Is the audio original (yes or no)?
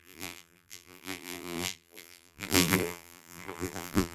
no